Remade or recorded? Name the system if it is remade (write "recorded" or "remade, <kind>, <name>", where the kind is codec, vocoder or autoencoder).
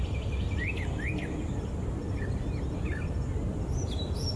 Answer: remade, vocoder, BigVGAN v2